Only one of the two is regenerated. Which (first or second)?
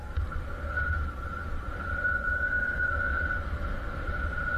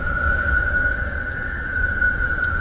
second